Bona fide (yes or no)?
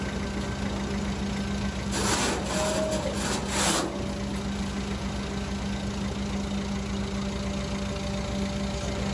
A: yes